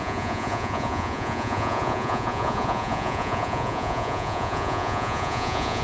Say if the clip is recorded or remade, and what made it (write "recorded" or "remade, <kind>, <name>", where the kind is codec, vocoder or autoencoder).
remade, vocoder, Vocos